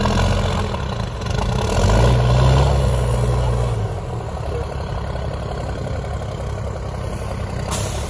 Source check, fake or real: real